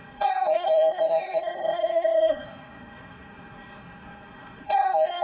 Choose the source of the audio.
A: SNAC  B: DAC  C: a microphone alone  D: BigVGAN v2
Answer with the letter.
A